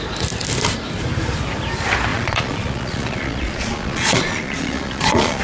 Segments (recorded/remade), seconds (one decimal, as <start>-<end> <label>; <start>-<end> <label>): 0.0-2.1 recorded; 2.1-5.4 remade